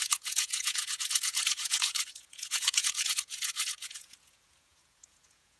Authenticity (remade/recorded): remade